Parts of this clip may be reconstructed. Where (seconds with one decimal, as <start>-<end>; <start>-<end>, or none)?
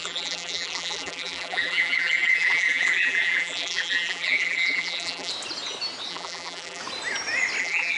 0.0-5.3; 6.1-6.8; 7.6-8.0